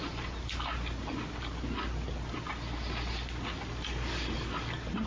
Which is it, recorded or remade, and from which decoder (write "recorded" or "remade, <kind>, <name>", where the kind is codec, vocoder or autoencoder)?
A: recorded